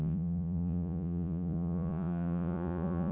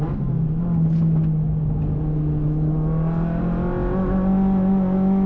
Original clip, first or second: second